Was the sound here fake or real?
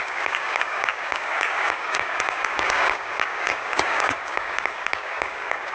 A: fake